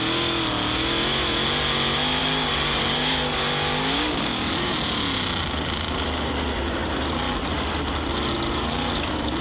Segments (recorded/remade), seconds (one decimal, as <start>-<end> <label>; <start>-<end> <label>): 0.0-2.2 recorded; 2.2-4.5 remade; 4.5-9.4 recorded